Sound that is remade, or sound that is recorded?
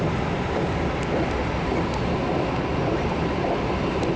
recorded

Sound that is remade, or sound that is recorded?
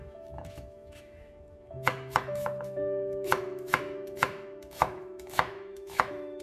remade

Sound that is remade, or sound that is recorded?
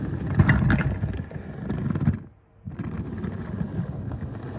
recorded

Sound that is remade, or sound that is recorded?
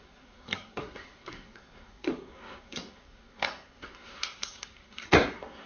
remade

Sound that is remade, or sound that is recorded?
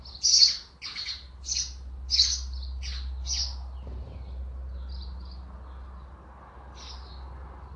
recorded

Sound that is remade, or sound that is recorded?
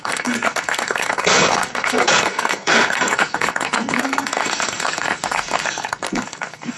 remade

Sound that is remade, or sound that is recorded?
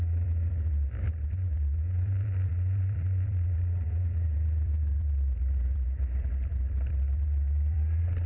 remade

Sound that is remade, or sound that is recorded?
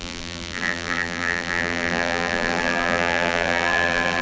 remade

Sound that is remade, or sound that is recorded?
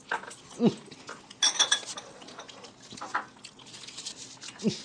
recorded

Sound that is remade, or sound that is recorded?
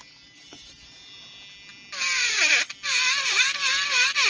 recorded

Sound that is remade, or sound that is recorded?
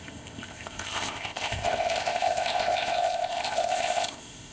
remade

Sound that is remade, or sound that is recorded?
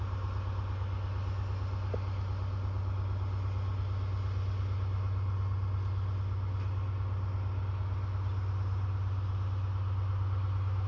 recorded